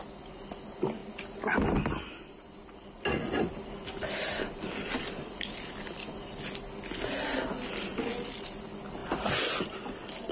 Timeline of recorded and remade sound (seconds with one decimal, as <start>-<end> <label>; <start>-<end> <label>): 0.0-10.3 recorded